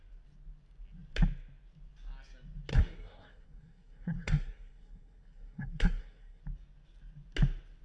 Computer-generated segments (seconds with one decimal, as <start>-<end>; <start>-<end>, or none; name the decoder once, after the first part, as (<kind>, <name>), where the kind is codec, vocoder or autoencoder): 2.7-6.4 (codec, SNAC)